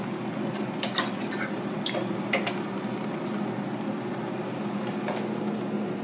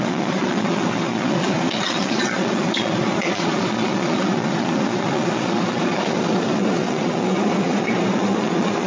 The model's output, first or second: second